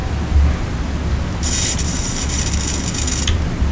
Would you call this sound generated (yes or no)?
no